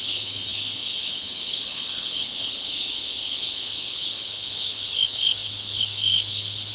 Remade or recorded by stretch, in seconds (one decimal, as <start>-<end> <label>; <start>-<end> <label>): 0.0-6.7 remade